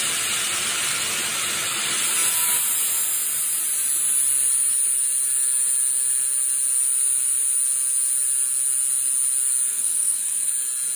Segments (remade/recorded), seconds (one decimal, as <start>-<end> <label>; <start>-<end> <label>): 0.0-9.7 recorded; 9.7-10.5 remade; 10.5-11.0 recorded